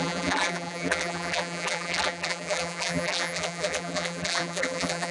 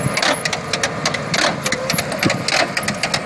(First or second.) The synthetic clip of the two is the first